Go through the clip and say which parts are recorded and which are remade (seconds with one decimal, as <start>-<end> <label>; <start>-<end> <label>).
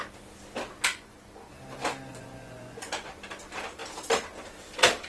0.0-0.9 recorded; 0.9-1.5 remade; 1.5-2.1 recorded; 2.1-3.1 remade; 3.1-5.1 recorded